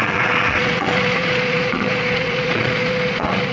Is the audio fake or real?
fake